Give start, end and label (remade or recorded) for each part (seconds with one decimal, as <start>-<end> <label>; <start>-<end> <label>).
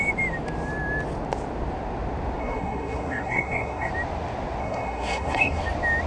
0.0-2.4 recorded; 2.4-3.9 remade; 3.9-4.6 recorded; 4.6-5.6 remade; 5.6-6.1 recorded